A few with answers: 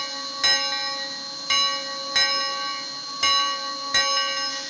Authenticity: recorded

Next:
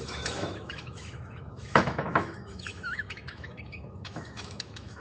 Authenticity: remade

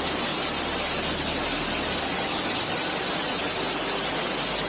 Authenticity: recorded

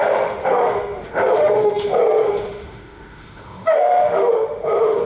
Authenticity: remade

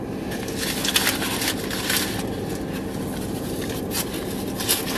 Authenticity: recorded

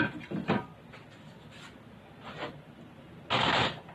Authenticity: recorded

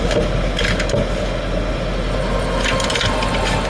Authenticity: recorded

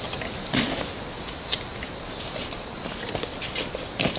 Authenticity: recorded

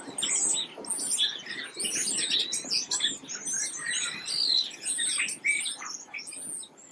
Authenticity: recorded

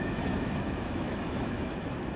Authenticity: remade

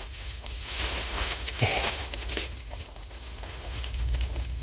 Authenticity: remade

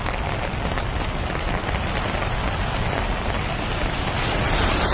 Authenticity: recorded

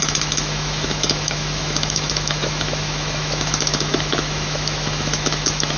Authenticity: remade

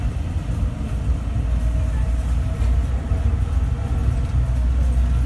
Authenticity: recorded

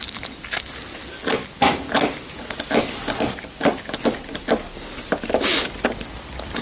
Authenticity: recorded